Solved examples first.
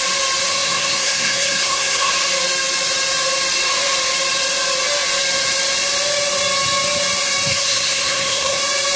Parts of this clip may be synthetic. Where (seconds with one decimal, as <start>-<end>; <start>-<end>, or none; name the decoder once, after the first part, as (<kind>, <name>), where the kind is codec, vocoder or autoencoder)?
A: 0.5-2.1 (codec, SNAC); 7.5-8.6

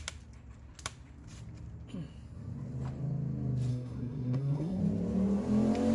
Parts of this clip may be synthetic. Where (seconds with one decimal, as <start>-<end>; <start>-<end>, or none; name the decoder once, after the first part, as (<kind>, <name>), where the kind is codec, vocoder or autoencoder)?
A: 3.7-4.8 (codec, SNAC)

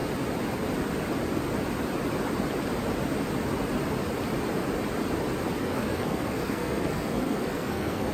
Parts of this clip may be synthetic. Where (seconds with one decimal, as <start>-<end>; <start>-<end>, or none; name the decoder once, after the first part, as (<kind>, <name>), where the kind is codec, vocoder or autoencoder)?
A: 5.6-8.1 (codec, SNAC)